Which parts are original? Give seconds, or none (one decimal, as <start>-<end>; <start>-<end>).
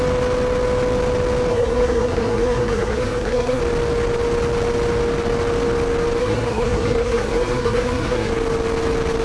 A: 0.0-1.5; 3.6-6.2; 8.3-9.2